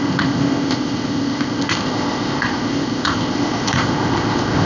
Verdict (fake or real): fake